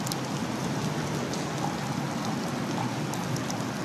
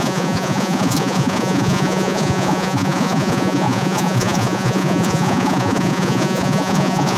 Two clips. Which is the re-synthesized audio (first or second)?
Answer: second